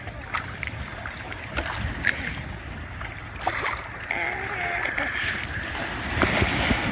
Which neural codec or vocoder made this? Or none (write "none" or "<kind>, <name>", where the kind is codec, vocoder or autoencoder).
none